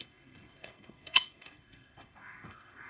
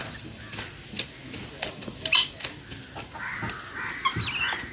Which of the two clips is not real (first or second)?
first